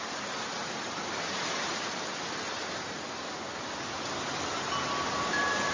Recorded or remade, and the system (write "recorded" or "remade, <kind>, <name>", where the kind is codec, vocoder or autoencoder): recorded